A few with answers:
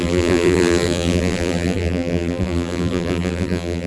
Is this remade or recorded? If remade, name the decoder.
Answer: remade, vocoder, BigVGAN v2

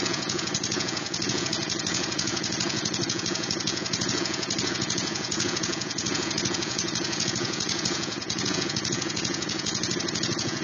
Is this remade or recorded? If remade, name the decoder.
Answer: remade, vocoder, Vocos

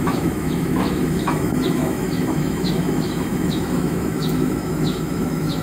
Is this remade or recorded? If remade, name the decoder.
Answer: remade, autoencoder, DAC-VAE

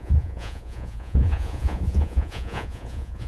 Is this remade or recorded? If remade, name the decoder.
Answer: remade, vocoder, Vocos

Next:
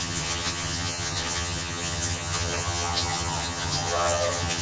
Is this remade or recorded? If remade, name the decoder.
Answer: remade, vocoder, HiFi-GAN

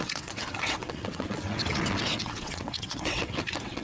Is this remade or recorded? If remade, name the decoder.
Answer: remade, vocoder, WaveNeXt